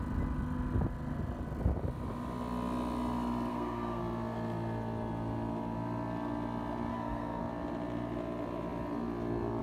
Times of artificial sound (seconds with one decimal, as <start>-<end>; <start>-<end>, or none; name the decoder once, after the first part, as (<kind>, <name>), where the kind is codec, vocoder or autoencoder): 3.5-4.0 (codec, SNAC); 6.9-7.4